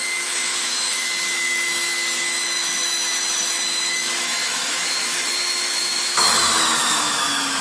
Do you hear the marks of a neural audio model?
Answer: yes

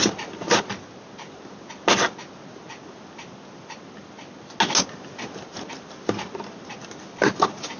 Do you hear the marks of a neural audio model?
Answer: no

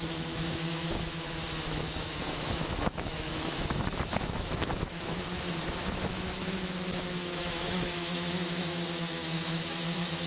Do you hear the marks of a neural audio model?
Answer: yes